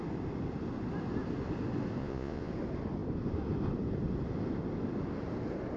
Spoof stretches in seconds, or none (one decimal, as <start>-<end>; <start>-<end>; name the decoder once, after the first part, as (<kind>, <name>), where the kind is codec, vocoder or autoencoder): 2.0-2.5 (vocoder, Vocos)